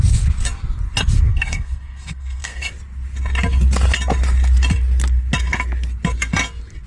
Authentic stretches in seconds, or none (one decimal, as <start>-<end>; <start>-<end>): 0.0-1.3; 2.7-6.9